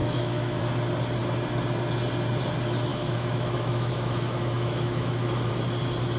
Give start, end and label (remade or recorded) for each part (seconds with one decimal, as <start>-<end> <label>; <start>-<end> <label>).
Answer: 0.0-0.6 remade; 0.6-2.9 recorded; 2.9-5.5 remade; 5.5-6.2 recorded